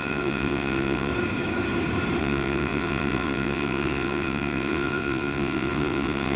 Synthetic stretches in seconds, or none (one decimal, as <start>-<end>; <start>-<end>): 0.0-1.1; 2.2-6.4